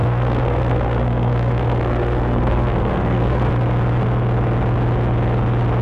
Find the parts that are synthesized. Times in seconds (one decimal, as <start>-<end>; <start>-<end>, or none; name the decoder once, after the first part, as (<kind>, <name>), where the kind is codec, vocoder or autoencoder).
0.0-3.5 (codec, SNAC)